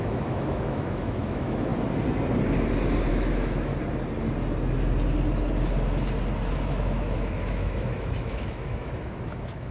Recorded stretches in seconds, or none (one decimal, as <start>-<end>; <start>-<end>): 1.7-3.1; 3.7-6.5